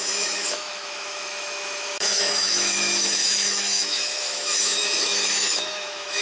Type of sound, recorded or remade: remade